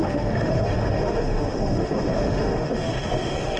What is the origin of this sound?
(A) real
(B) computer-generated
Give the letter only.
B